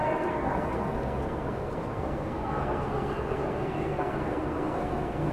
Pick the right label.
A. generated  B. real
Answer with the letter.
A